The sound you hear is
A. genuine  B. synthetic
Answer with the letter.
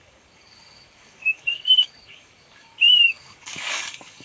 B